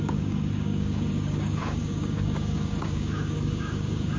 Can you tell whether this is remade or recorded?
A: remade